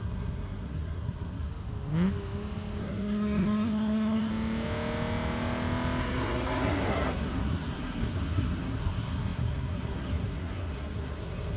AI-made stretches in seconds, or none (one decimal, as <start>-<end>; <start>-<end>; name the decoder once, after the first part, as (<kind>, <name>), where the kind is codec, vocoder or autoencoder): 0.0-1.5 (codec, SNAC); 2.8-4.3; 6.0-11.6